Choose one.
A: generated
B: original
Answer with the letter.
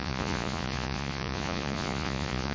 A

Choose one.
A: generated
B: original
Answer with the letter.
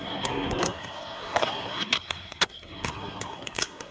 A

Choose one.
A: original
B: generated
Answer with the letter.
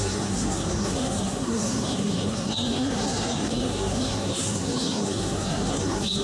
B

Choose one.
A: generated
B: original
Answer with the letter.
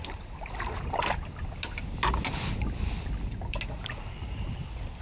B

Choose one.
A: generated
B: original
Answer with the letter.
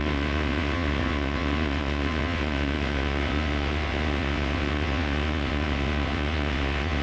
A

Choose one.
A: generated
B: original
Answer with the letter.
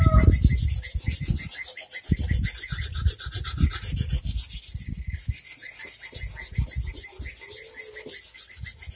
B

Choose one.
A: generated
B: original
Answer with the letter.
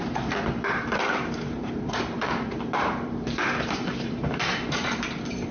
A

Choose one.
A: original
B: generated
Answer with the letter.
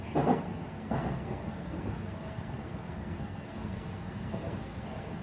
B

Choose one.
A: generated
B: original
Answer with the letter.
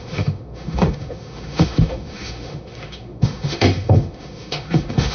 A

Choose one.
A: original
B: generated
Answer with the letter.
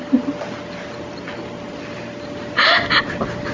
A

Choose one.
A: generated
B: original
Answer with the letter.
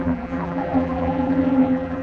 A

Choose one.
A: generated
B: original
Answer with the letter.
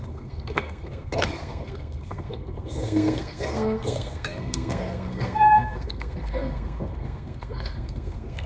A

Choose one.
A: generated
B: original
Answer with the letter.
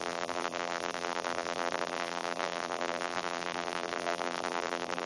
A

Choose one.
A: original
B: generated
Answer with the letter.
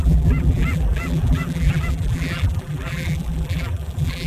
B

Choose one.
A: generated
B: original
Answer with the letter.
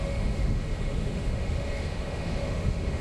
A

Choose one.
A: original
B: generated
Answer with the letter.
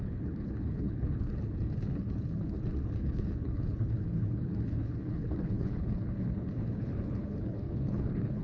B